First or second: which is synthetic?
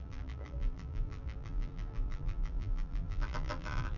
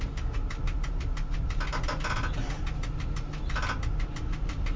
first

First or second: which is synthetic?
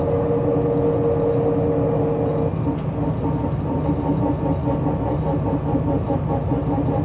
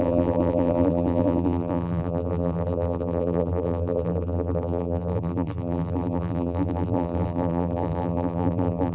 second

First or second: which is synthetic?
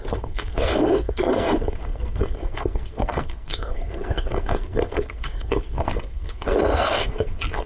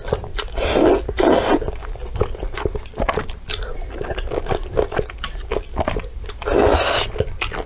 first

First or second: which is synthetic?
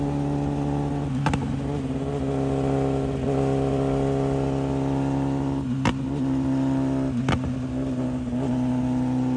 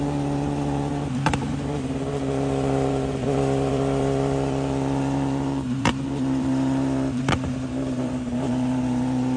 second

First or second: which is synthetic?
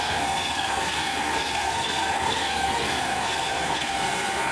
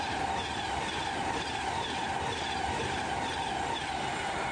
first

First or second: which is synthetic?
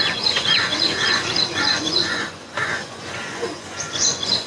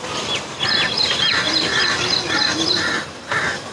first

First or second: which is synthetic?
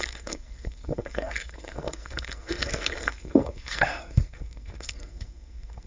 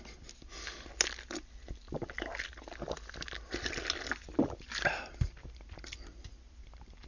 first